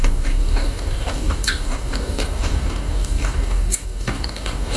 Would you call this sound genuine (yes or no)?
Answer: no